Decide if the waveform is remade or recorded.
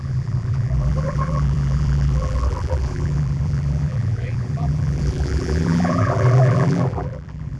remade